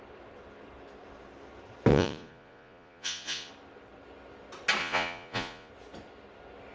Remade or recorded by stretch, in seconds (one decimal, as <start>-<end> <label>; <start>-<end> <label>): 0.0-1.9 recorded; 1.9-3.5 remade; 3.5-4.8 recorded; 4.8-5.7 remade; 5.7-6.7 recorded